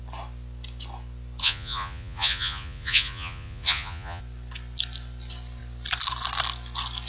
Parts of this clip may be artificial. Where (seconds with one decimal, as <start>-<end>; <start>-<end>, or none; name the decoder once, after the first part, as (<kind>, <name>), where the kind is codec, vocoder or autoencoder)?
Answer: 1.4-4.2 (vocoder, Vocos)